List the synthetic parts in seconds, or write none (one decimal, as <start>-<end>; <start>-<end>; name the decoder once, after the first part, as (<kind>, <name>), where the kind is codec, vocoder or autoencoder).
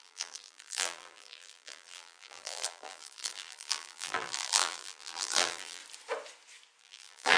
0.0-5.8 (vocoder, BigVGAN v2); 6.8-7.4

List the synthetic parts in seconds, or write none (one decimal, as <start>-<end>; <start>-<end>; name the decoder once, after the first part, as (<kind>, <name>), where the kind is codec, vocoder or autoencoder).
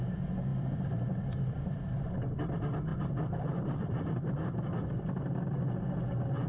0.5-2.1 (vocoder, BigVGAN v2); 2.9-4.9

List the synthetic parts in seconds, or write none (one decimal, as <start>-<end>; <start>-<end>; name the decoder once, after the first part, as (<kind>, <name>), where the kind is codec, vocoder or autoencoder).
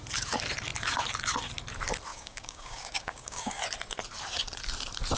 2.1-3.6 (codec, DAC)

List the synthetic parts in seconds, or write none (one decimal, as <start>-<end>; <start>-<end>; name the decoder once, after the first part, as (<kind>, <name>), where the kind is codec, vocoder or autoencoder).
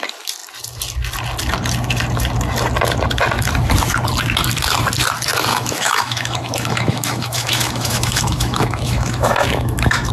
5.5-10.1 (autoencoder, DAC-VAE)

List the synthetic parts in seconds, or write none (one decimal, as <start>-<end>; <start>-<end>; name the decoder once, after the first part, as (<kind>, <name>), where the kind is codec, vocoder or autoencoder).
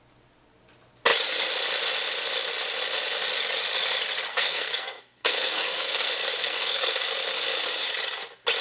4.3-7.0 (codec, SNAC)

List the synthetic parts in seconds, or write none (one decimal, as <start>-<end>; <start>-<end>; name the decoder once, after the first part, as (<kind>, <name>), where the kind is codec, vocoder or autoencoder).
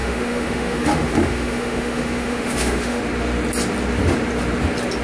0.0-3.0 (autoencoder, DAC-VAE)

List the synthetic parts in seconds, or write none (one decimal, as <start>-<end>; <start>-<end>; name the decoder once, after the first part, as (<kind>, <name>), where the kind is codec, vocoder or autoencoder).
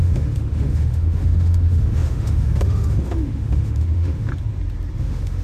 0.0-4.3 (autoencoder, DAC-VAE); 5.0-5.4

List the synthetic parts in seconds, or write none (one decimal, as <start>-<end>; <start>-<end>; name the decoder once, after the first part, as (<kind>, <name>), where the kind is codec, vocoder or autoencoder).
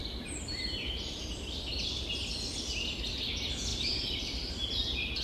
0.0-1.7 (vocoder, BigVGAN v2); 3.7-4.5